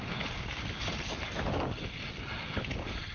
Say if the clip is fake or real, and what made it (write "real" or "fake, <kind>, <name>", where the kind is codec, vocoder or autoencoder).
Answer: real